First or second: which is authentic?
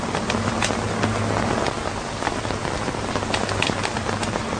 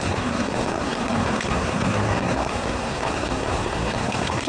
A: first